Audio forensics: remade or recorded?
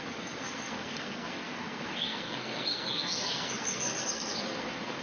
remade